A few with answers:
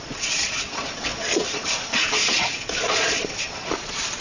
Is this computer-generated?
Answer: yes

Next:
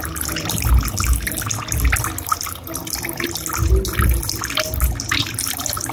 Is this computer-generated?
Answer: no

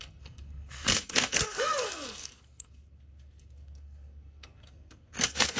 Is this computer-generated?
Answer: yes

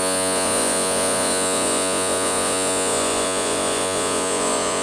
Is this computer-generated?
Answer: yes